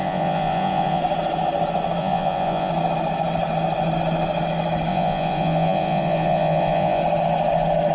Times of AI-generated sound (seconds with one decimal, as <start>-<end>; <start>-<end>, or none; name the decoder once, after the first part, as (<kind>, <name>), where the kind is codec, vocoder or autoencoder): 0.0-1.0 (vocoder, Vocos); 2.0-2.7; 4.9-7.0